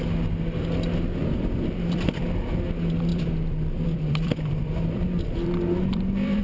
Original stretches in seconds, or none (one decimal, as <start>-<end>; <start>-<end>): 0.0-1.2; 2.2-3.1

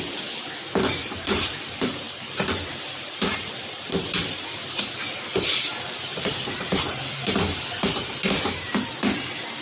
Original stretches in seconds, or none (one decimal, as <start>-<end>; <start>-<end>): 0.0-1.0; 4.8-6.1; 7.6-9.6

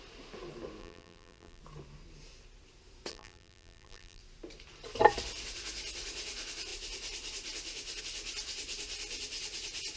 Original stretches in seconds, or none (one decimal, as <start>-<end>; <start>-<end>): 0.0-0.8; 1.6-3.1; 4.2-10.0

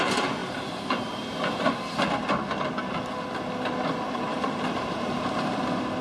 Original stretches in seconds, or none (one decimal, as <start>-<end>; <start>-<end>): 0.0-0.4; 1.6-4.3; 5.6-6.0